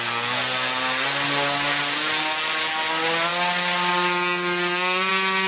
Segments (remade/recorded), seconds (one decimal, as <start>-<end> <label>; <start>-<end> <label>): 0.0-5.5 recorded